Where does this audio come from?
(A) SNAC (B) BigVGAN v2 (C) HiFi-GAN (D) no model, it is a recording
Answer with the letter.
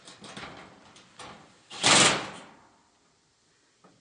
D